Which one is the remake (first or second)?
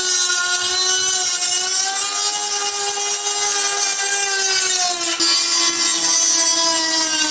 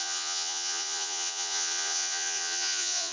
second